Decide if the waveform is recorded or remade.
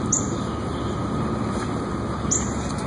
recorded